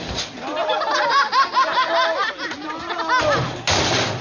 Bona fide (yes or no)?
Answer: yes